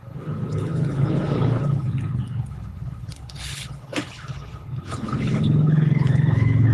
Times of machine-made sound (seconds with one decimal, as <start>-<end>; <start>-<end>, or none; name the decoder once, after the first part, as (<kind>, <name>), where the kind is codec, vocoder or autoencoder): 0.0-6.7 (codec, HILCodec)